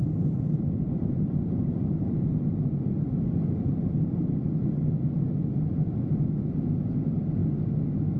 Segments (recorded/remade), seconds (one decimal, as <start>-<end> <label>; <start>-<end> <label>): 0.0-4.9 remade; 4.9-8.2 recorded